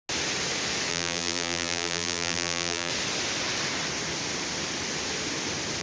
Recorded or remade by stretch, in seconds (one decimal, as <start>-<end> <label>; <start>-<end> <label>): 0.0-0.9 recorded; 0.9-2.9 remade; 2.9-5.8 recorded